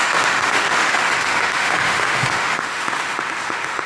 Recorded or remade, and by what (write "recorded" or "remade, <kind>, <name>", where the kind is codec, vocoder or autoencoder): remade, autoencoder, DAC-VAE